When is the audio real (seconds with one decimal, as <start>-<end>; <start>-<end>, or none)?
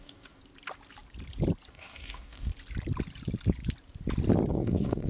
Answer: 0.4-1.7; 2.5-4.5